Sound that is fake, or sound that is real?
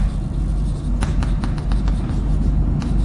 real